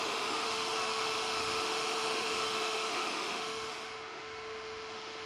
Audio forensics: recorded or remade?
remade